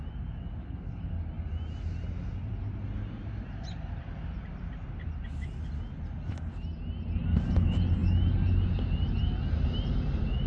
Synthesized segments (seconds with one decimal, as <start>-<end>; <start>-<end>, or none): 0.6-1.1